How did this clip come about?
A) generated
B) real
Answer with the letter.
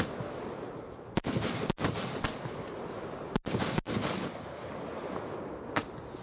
B